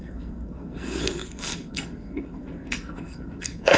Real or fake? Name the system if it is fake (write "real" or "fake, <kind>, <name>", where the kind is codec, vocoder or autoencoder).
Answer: fake, codec, SNAC